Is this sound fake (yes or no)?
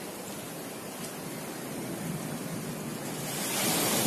no